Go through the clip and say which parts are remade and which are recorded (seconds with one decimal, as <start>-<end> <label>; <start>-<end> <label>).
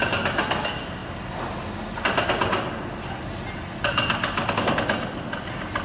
0.0-5.8 recorded